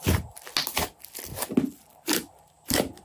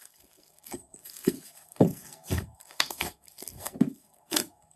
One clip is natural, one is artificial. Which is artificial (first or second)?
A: second